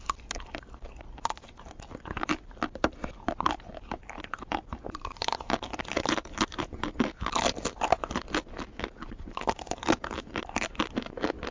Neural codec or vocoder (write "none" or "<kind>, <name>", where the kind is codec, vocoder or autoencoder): none